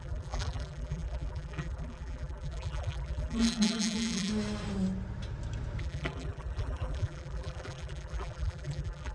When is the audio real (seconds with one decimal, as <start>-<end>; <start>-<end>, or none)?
4.3-5.8